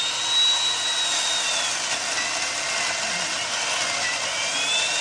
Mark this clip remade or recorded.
recorded